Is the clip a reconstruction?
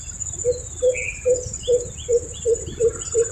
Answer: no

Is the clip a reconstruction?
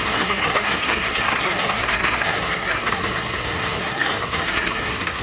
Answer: yes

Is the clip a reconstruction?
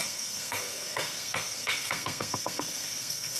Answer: yes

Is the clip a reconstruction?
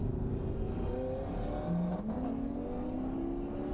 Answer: no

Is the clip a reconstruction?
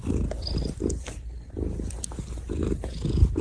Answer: no